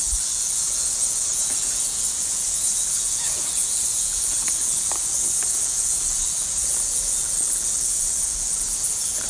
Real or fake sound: fake